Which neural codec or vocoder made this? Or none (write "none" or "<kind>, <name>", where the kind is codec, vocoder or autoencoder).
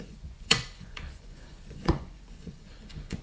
vocoder, Vocos